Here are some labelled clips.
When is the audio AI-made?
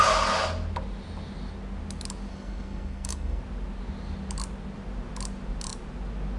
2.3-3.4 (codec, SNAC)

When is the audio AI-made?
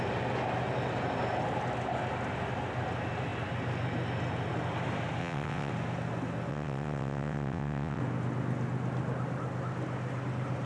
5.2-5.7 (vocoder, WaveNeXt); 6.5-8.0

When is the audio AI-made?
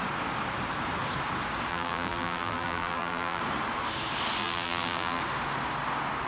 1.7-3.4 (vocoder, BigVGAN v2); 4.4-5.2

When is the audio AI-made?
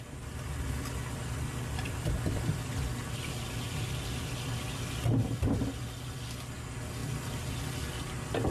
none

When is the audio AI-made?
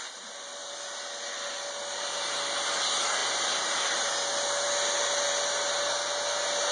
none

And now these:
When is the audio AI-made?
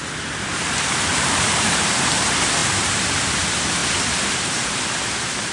1.1-2.2 (vocoder, BigVGAN v2); 2.6-3.3